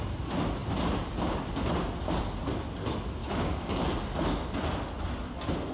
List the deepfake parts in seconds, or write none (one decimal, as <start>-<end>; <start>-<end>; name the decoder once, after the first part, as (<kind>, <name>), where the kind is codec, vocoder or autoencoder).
3.2-3.8 (codec, DAC)